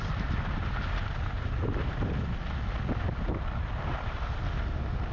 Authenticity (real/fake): real